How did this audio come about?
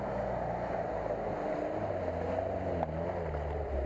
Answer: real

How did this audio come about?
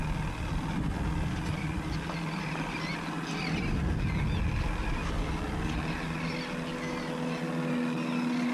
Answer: real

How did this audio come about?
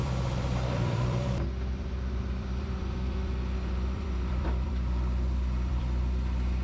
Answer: fake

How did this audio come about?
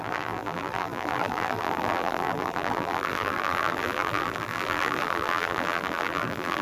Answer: fake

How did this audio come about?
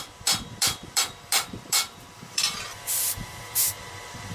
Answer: fake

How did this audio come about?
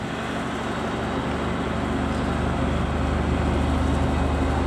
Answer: real